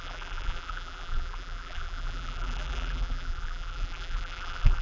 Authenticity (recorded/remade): remade